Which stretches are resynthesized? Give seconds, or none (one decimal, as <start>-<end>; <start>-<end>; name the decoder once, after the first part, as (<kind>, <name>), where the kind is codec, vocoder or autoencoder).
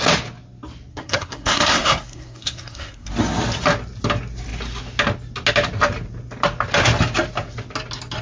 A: 0.9-3.1 (codec, SNAC)